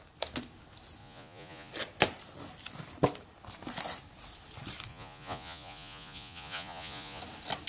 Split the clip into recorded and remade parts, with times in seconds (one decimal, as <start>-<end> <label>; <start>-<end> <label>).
0.0-1.0 recorded; 1.0-1.7 remade; 1.7-4.9 recorded; 4.9-7.2 remade; 7.2-7.7 recorded